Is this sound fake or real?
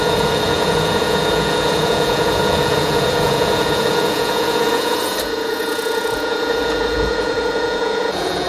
fake